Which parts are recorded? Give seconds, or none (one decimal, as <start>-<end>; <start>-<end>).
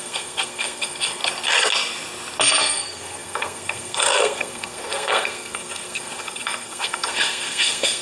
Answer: 1.2-2.6